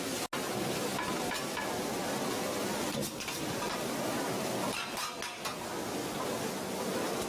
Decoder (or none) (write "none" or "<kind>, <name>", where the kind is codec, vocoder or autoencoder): none